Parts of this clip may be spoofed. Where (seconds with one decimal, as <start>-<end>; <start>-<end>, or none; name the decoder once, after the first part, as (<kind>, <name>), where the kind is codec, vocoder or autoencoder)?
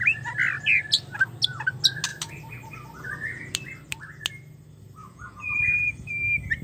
5.0-6.1 (vocoder, Vocos)